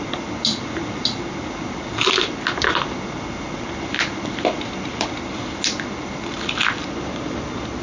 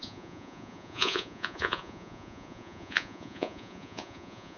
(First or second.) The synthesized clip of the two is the second